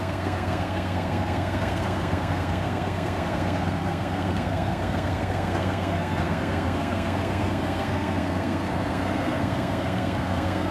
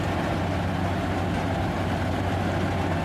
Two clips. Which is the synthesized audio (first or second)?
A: first